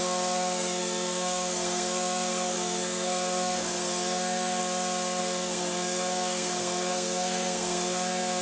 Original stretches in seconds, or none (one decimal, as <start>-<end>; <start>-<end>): 4.6-5.2

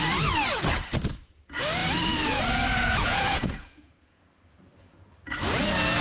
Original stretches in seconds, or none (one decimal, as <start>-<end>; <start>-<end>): 0.0-2.8; 4.3-6.0

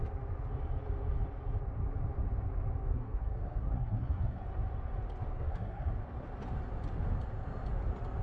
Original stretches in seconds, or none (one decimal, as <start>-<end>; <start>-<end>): 0.0-2.9; 4.4-5.3; 5.9-8.2

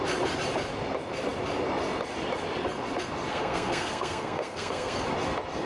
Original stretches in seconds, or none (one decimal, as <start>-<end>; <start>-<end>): 0.0-3.3; 5.0-5.7

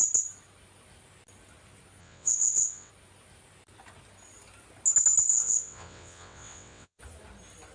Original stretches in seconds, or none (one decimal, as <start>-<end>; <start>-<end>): 0.0-2.0; 2.9-5.3; 7.0-7.7

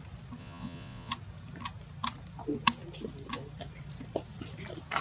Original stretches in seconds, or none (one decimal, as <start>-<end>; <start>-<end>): 0.0-0.4; 1.1-5.0

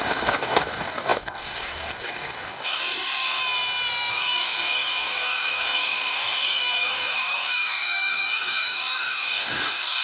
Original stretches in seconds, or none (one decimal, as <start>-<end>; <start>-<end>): 3.4-4.1

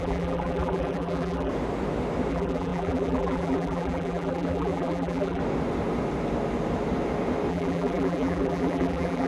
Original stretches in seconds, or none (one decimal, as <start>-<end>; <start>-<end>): 1.5-2.3; 5.4-7.5